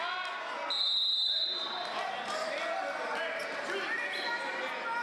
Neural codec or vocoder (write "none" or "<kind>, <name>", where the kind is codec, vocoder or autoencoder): none